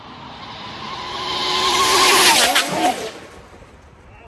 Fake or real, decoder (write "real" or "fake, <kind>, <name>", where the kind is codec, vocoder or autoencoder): real